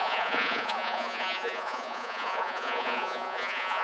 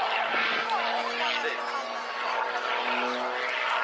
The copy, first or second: first